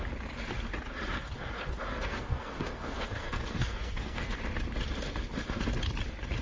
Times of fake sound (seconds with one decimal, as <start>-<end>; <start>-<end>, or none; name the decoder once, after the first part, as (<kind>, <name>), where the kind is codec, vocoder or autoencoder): 1.9-4.4 (codec, SNAC)